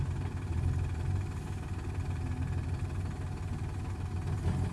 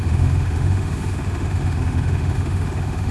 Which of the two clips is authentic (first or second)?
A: first